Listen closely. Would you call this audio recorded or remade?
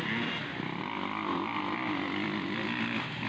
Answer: recorded